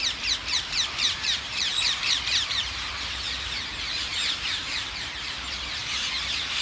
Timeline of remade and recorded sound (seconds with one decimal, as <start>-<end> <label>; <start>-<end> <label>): 0.0-4.1 remade; 4.1-4.6 recorded; 4.6-5.8 remade; 5.8-6.6 recorded